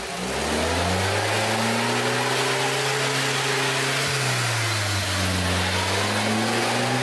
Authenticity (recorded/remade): recorded